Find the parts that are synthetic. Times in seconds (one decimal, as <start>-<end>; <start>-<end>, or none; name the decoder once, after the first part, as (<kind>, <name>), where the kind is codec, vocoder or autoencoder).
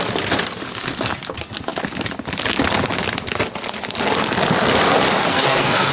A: 5.3-5.9 (codec, SNAC)